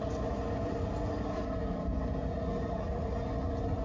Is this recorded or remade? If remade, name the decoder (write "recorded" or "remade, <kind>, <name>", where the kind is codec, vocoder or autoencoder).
recorded